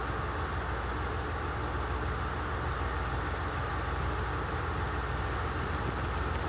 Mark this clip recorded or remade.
recorded